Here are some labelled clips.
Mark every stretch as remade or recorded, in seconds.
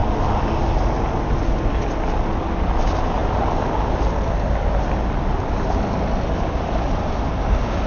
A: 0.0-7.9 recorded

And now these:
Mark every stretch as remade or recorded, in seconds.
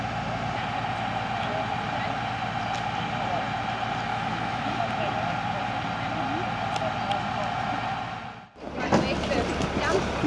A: 0.0-4.1 recorded; 4.1-4.8 remade; 4.8-10.3 recorded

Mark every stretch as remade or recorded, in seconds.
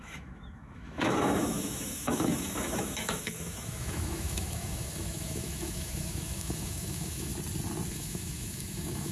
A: 0.0-7.3 remade; 7.3-7.9 recorded; 7.9-9.1 remade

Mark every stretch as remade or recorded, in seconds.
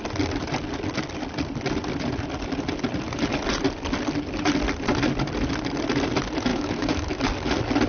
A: 0.0-6.5 recorded; 6.5-7.2 remade; 7.2-7.9 recorded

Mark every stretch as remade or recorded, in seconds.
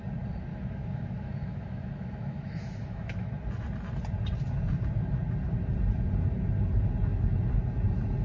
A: 0.0-0.5 recorded; 0.5-3.3 remade; 3.3-8.2 recorded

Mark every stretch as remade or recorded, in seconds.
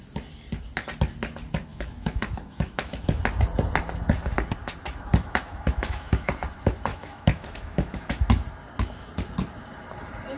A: 0.0-1.7 recorded; 1.7-3.2 remade; 3.2-5.1 recorded; 5.1-6.3 remade; 6.3-6.9 recorded; 6.9-8.2 remade; 8.2-10.4 recorded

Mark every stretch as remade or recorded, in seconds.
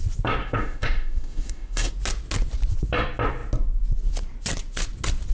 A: 0.0-0.4 recorded; 0.4-1.9 remade; 1.9-5.3 recorded